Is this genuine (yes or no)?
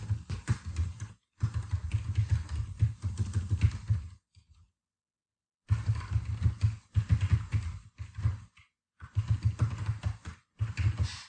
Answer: yes